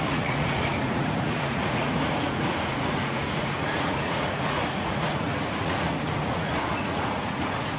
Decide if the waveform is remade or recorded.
remade